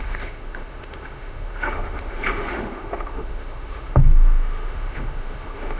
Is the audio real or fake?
fake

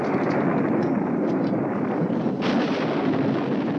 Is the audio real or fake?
real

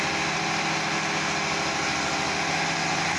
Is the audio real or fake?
real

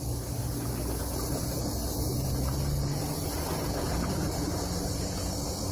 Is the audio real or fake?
real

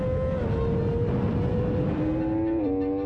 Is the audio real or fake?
real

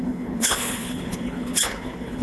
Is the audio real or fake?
fake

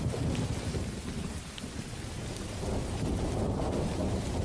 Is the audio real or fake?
real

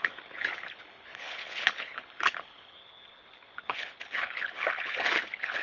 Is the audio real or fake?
fake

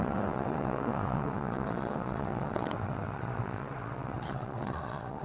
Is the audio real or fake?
fake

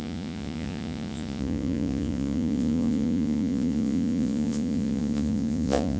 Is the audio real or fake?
fake